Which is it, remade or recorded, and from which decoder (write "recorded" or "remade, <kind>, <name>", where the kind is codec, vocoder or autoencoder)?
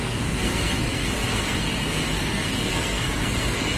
remade, codec, SNAC